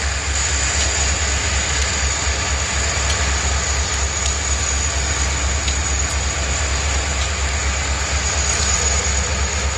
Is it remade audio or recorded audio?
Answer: recorded